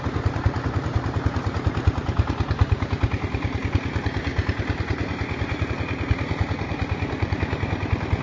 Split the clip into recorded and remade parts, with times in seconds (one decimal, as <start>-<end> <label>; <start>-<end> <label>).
0.0-8.2 recorded